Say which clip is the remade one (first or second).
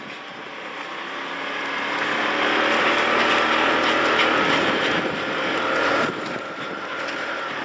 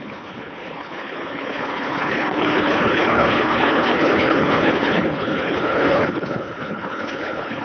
second